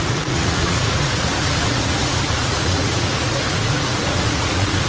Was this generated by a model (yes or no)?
yes